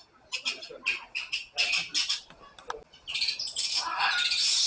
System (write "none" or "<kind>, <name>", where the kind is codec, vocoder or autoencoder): none